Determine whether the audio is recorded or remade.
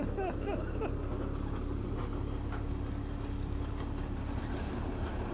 recorded